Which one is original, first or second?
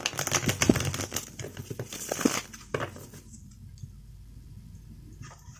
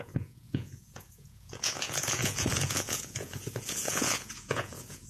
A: first